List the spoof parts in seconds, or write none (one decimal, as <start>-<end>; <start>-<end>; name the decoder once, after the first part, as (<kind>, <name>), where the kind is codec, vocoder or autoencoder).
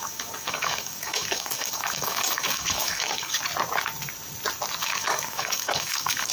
0.0-3.4 (codec, DAC); 4.8-6.3